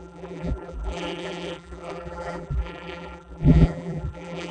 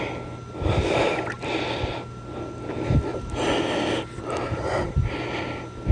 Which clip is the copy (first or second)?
first